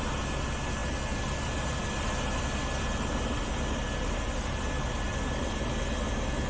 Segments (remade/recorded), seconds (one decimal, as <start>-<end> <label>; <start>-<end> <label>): 0.0-6.5 recorded